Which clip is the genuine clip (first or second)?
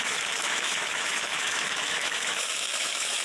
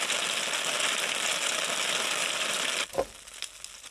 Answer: second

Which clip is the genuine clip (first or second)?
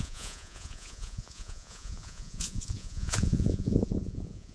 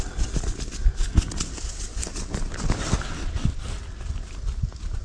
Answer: second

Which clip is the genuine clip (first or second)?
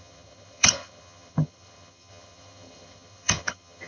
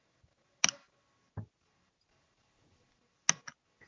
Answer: second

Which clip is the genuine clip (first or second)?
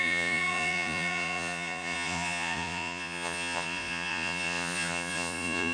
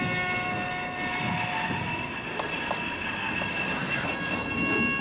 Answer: second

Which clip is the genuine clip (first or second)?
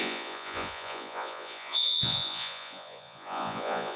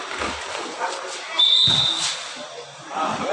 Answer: second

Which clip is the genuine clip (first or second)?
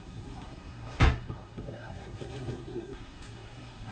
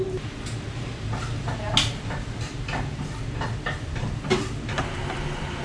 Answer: second